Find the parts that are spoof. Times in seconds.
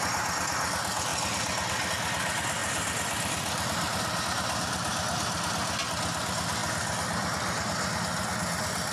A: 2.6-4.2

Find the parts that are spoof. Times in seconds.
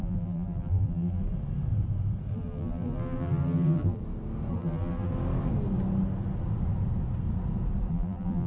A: 0.0-1.2; 2.3-4.0; 4.5-5.1; 7.9-8.5